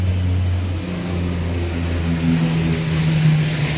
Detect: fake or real real